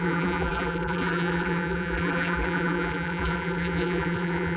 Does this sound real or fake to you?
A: fake